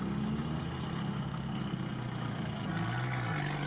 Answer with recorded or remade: recorded